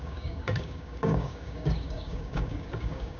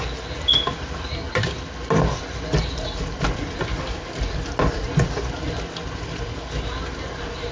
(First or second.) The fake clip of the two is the first